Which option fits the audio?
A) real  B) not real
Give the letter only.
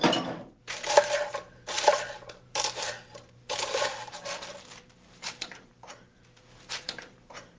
B